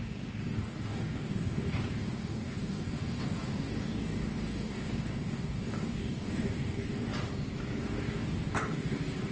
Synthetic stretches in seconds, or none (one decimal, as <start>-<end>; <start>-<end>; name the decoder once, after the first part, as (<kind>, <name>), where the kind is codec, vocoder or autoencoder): 0.0-7.1 (codec, DAC); 7.8-9.3

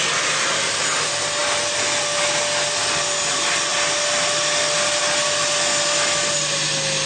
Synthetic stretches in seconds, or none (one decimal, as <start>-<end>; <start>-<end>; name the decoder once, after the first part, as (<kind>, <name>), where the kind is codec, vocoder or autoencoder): none

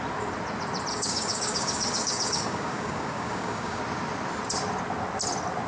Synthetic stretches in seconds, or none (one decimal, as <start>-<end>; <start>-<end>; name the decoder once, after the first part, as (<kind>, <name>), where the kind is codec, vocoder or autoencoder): 0.9-3.8 (codec, DAC)

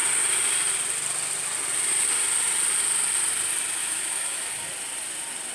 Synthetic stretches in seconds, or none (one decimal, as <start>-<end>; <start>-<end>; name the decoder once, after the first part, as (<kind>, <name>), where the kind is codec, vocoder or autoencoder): 3.8-4.5 (autoencoder, DAC-VAE)